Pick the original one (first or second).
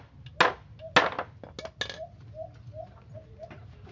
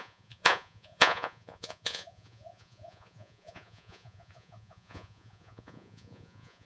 first